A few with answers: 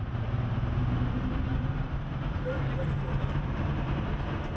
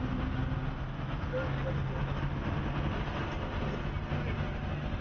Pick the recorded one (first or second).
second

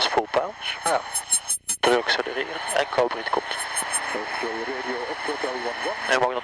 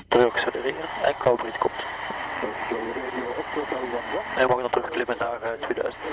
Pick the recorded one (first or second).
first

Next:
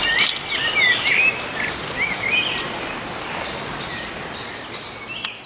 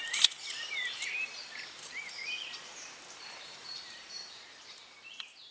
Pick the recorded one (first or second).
first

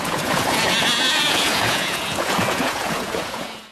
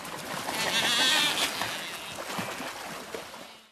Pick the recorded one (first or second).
second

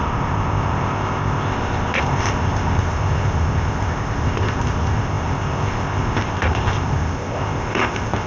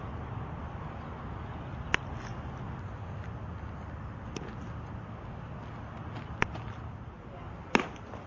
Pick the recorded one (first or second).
second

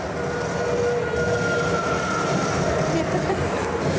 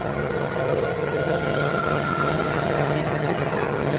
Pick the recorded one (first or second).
first